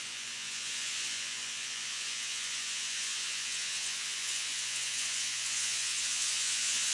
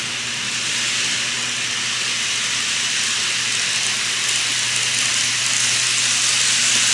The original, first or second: second